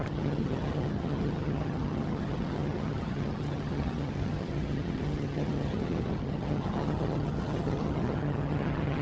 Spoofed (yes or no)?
yes